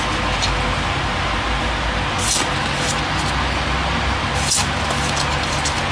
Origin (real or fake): real